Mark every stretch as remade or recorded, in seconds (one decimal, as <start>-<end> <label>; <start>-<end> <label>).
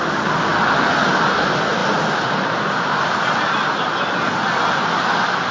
0.0-5.5 remade